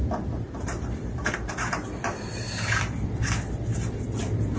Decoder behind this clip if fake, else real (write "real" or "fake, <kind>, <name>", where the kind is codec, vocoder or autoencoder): fake, vocoder, BigVGAN v2